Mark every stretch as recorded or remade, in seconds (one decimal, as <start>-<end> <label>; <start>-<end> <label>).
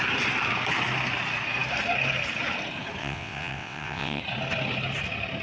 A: 0.0-3.0 recorded; 3.0-4.2 remade; 4.2-5.4 recorded